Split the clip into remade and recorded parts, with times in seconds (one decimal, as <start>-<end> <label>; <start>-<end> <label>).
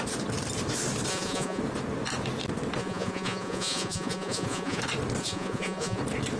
0.0-1.1 recorded; 1.1-1.6 remade; 1.6-2.8 recorded; 2.8-4.8 remade; 4.8-5.2 recorded; 5.2-6.0 remade; 6.0-6.4 recorded